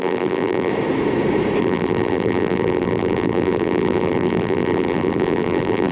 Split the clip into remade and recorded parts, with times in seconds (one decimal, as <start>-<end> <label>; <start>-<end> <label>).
0.0-0.7 remade; 0.7-1.6 recorded; 1.6-5.9 remade